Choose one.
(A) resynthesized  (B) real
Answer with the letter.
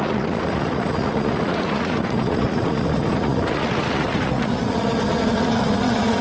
A